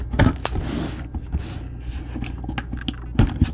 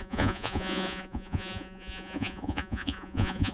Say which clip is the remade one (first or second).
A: second